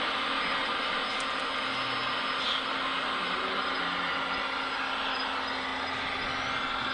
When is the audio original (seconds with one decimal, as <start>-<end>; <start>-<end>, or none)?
0.0-6.9